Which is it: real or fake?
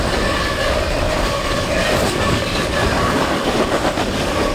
fake